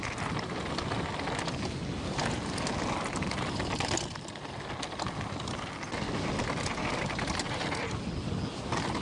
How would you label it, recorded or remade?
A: recorded